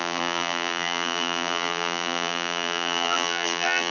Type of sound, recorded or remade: remade